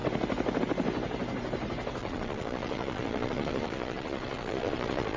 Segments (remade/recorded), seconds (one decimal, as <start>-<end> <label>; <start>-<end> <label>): 0.0-2.0 recorded; 2.0-5.2 remade